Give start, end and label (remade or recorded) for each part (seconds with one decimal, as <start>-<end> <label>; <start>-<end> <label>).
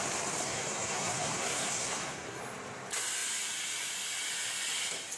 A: 0.0-0.4 recorded; 0.4-2.4 remade; 2.4-5.2 recorded